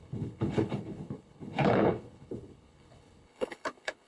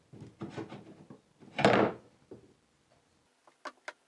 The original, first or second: second